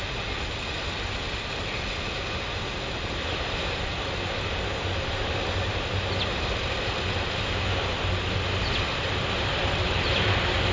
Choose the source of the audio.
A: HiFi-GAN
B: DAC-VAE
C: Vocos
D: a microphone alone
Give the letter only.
D